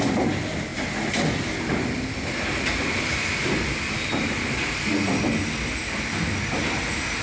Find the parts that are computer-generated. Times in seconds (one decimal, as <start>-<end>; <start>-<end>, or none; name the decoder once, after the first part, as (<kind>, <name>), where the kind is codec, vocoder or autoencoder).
none